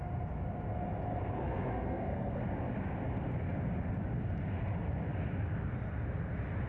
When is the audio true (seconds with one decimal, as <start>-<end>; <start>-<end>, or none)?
0.0-1.4; 2.4-6.7